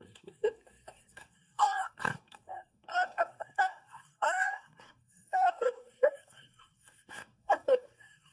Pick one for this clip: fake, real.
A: fake